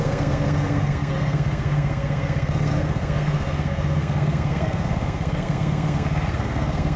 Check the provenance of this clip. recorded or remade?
remade